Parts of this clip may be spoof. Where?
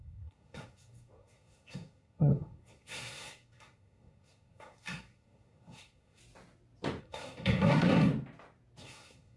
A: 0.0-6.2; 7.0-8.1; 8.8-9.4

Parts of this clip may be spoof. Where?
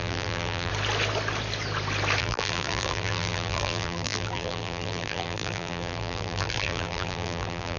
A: 0.0-0.7; 2.2-7.8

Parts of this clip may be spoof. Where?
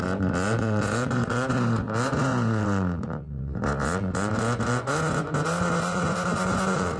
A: 0.0-7.0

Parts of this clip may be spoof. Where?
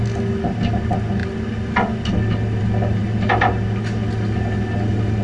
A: none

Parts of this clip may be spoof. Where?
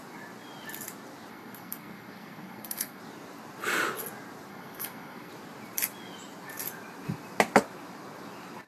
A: 1.3-3.0; 4.5-5.3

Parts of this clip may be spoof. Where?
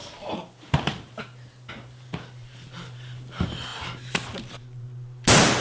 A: 0.0-1.2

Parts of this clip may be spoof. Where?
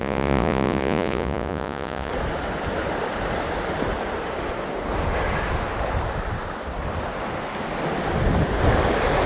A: 0.0-2.1